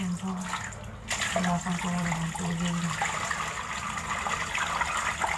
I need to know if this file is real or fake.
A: real